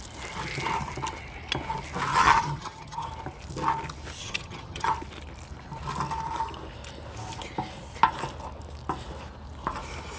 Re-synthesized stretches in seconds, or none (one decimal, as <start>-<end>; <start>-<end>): 2.1-3.1; 4.2-4.9